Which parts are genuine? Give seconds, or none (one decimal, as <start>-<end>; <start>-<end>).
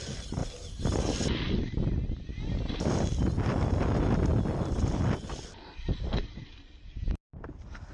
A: 0.0-7.9